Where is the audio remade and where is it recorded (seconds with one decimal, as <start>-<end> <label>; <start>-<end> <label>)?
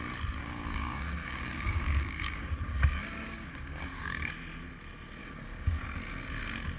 0.0-0.4 recorded; 0.4-4.3 remade; 4.3-5.2 recorded; 5.2-5.8 remade; 5.8-6.8 recorded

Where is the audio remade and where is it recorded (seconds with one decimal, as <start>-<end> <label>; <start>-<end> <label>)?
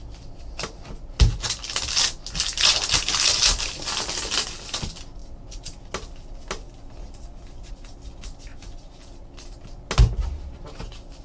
0.0-11.2 recorded